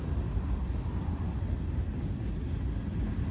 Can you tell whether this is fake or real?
real